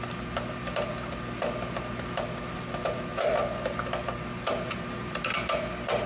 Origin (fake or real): real